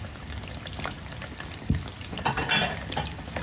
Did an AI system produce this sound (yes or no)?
no